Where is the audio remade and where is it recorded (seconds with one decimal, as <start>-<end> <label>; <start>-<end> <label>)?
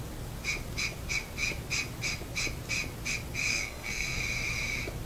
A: 0.0-3.5 recorded; 3.5-4.2 remade; 4.2-5.0 recorded